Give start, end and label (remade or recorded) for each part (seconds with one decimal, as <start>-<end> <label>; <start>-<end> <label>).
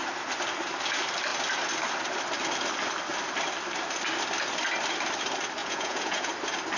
0.0-5.6 recorded; 5.6-6.3 remade; 6.3-6.8 recorded